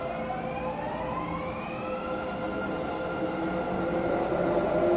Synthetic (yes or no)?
no